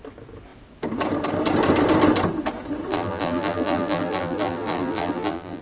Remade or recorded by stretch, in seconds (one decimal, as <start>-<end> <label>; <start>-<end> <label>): 0.0-2.9 recorded; 2.9-5.6 remade